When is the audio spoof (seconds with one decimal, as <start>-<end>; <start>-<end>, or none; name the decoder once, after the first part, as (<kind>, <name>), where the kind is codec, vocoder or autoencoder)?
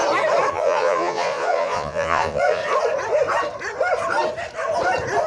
0.5-2.6 (vocoder, Vocos)